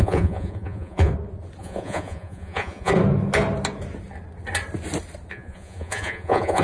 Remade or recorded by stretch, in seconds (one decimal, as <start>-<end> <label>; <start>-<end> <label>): 0.0-1.1 remade; 1.1-1.6 recorded; 1.6-2.9 remade; 2.9-5.3 recorded; 5.3-6.6 remade